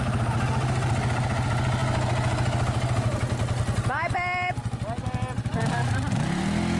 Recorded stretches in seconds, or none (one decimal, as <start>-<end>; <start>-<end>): 0.0-6.8